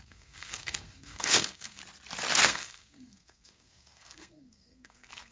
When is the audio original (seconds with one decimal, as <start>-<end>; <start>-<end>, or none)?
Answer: 1.8-2.4